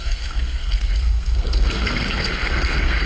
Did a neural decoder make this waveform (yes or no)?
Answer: yes